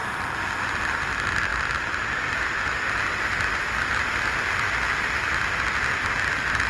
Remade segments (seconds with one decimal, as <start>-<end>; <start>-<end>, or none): none